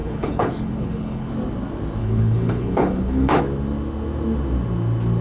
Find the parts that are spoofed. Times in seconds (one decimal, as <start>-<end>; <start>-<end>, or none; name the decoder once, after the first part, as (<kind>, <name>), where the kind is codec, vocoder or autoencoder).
0.0-1.3 (codec, HILCodec); 2.0-3.4